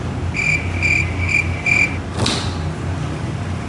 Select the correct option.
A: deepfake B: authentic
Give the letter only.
B